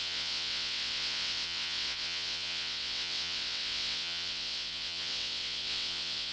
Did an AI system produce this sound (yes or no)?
yes